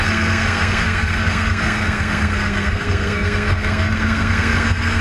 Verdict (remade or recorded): remade